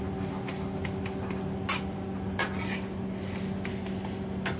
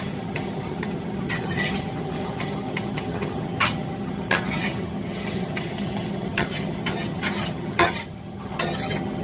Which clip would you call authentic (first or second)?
first